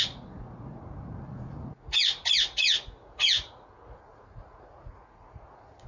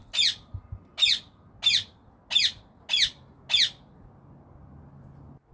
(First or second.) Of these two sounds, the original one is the second